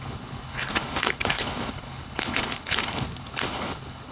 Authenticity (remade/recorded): remade